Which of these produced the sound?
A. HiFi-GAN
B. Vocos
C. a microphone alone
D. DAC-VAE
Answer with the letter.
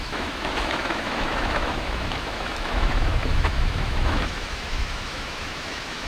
D